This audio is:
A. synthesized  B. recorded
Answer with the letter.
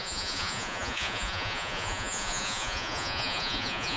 A